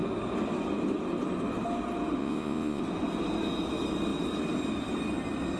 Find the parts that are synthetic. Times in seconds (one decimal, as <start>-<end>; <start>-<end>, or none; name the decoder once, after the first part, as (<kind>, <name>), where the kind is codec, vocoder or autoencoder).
2.2-2.8 (vocoder, Vocos)

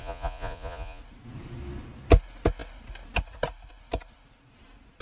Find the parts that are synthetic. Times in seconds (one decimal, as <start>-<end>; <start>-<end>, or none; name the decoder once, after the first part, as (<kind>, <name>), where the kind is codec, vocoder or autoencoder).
0.0-1.0 (vocoder, Vocos)

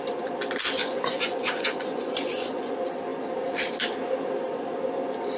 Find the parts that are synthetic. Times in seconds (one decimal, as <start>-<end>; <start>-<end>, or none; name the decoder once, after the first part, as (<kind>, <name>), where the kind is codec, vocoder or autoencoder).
0.8-2.7 (vocoder, Vocos)

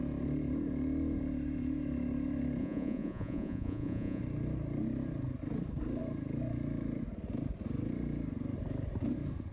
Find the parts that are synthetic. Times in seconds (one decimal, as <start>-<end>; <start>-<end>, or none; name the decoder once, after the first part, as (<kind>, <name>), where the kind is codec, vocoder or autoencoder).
2.6-4.2 (vocoder, Vocos)

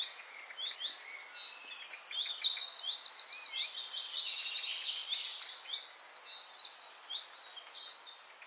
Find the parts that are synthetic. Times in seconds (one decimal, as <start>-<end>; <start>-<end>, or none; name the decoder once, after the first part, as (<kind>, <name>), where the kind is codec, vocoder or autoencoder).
none

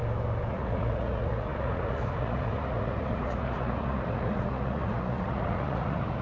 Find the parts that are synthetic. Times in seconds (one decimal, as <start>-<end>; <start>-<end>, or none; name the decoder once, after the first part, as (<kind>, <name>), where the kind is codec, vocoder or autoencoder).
0.5-6.2 (vocoder, Vocos)